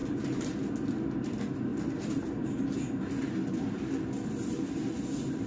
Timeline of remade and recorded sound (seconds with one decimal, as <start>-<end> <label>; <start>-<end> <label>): 0.0-0.5 remade; 0.5-1.7 recorded; 1.7-2.6 remade; 2.6-5.5 recorded